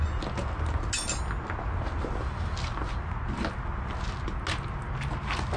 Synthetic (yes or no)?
no